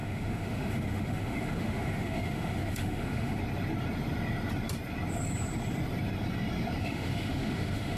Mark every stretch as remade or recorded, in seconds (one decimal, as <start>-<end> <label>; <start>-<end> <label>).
0.0-3.4 remade; 3.4-6.8 recorded; 6.8-8.0 remade